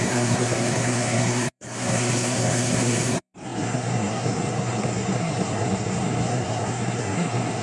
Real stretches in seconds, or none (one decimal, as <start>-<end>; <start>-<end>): none